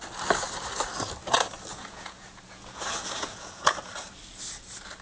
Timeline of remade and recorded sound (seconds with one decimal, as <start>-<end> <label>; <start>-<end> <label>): 0.0-1.7 recorded; 1.7-3.9 remade; 3.9-5.0 recorded